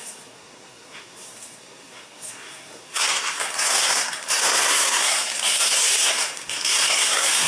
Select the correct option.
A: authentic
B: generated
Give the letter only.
B